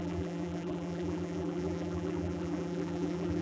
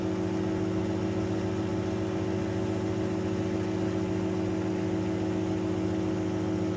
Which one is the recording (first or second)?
second